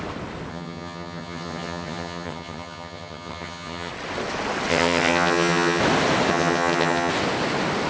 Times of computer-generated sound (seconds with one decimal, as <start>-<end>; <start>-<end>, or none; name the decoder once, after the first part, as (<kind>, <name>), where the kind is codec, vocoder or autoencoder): 0.5-3.9 (vocoder, HiFi-GAN); 4.7-5.8; 6.3-7.1